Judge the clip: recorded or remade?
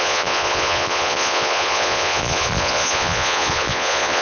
remade